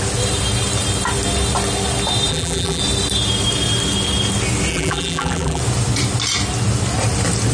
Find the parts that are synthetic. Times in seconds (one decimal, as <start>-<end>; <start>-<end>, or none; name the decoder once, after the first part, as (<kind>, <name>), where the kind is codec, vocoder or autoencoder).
2.3-2.8 (vocoder, BigVGAN v2); 4.7-5.6